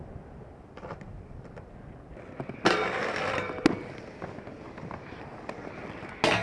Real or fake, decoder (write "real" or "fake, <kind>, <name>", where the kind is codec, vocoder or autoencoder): real